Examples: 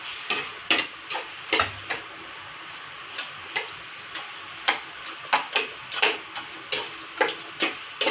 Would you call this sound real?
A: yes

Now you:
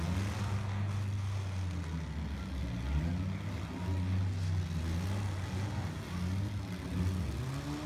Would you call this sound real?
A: yes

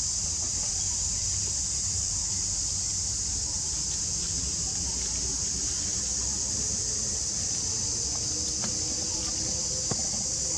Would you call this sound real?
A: yes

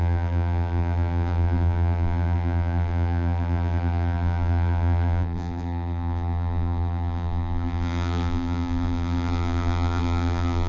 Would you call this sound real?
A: no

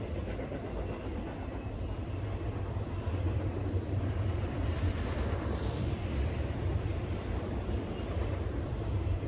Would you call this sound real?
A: no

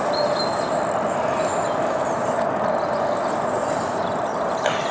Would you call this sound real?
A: no